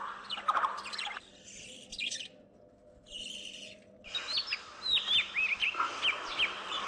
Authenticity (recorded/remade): remade